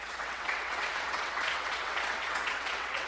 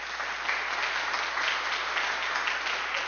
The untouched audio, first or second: second